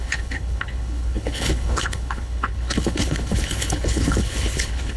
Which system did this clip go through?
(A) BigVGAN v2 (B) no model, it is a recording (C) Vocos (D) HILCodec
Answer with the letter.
D